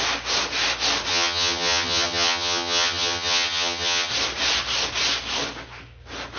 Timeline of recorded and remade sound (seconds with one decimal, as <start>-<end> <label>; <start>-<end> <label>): 0.0-1.1 recorded; 1.1-4.1 remade; 4.1-6.4 recorded